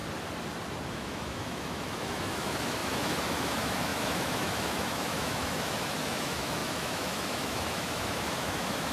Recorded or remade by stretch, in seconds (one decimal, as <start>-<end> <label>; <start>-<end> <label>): 0.0-0.9 recorded; 0.9-8.9 remade